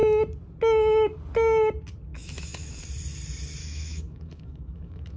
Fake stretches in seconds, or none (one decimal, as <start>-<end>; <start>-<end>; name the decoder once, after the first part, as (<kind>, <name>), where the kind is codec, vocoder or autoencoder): 2.1-2.8 (autoencoder, DAC-VAE); 3.6-5.2